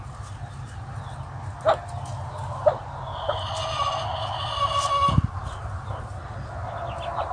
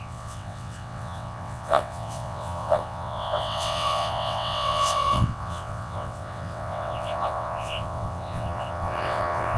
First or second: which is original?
first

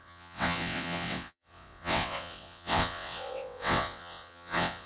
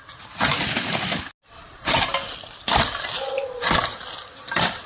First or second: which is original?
second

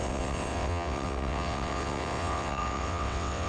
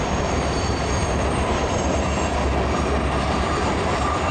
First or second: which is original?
second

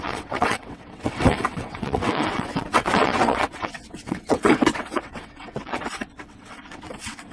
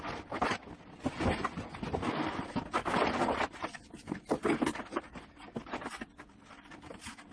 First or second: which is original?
second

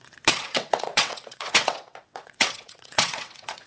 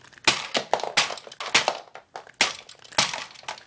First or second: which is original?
second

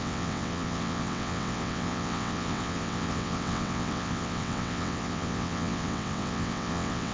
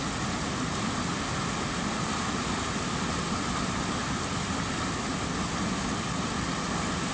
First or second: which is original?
second